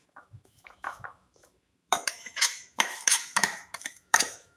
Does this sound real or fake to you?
fake